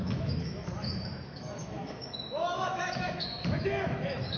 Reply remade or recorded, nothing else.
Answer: remade